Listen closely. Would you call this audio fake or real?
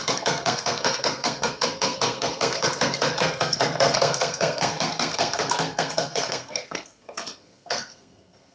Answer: fake